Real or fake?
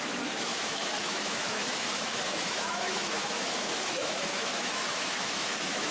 fake